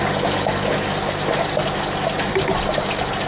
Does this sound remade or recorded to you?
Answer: recorded